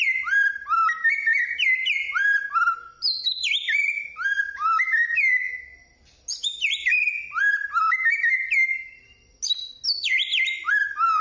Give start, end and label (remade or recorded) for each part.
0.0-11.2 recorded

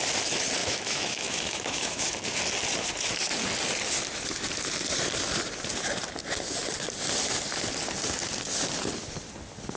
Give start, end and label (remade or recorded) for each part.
0.0-0.6 recorded; 0.6-2.4 remade; 2.4-9.8 recorded

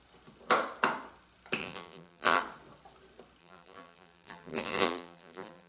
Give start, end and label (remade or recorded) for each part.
0.0-1.6 recorded; 1.6-2.4 remade; 2.4-3.4 recorded; 3.4-5.7 remade

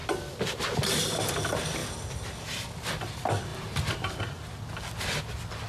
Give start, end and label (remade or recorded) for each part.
0.0-3.5 recorded; 3.5-4.2 remade; 4.2-5.7 recorded

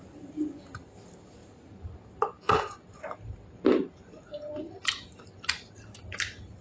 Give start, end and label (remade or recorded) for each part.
0.0-6.6 recorded

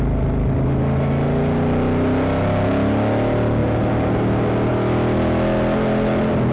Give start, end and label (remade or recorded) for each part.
0.0-6.5 recorded

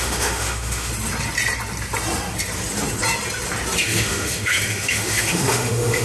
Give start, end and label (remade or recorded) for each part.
0.0-0.9 remade; 0.9-3.8 recorded; 3.8-6.0 remade